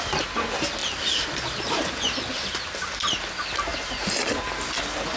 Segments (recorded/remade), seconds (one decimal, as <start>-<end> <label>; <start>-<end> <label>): 0.0-5.2 recorded